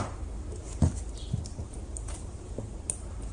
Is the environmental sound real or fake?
real